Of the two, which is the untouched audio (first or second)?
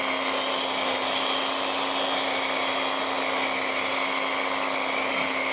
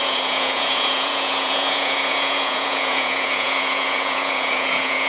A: first